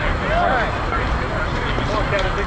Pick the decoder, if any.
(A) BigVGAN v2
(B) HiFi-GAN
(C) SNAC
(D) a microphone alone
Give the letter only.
D